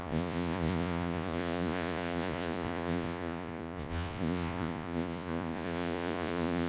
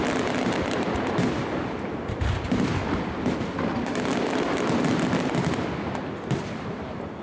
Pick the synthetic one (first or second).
first